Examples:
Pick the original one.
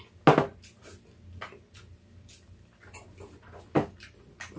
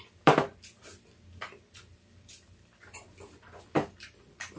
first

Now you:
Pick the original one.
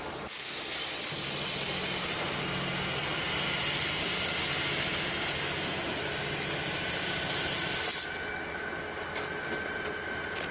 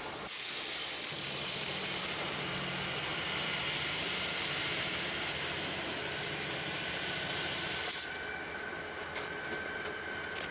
first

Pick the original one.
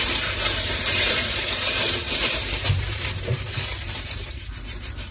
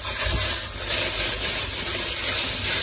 second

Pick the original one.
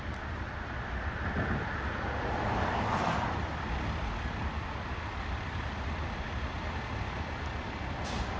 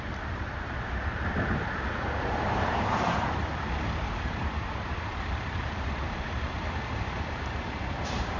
first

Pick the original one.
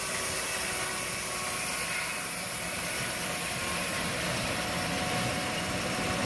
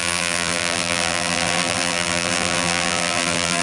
first